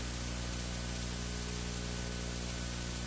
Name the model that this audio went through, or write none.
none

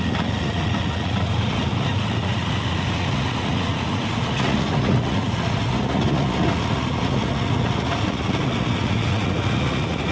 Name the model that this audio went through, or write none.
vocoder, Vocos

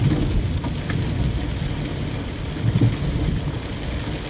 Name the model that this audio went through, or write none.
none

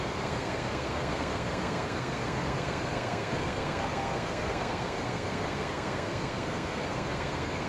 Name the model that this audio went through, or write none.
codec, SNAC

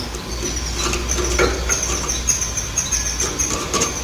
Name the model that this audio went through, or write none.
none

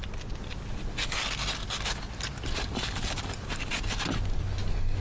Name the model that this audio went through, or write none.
none